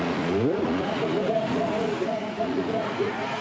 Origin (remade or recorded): remade